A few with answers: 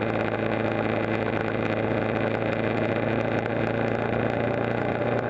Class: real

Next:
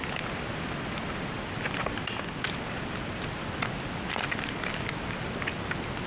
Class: real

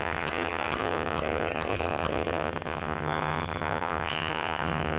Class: fake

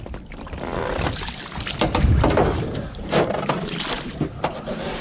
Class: real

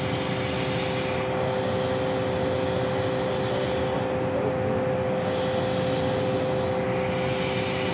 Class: real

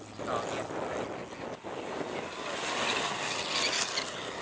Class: real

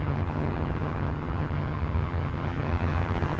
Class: fake